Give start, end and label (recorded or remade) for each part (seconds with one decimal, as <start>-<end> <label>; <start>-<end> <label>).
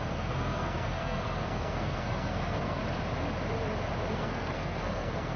0.0-2.8 remade; 2.8-4.1 recorded; 4.1-5.4 remade